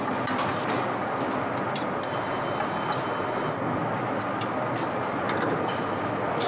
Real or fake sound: real